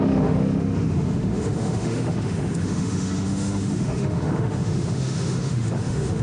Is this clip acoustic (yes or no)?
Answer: no